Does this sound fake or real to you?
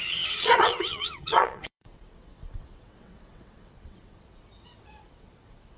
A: fake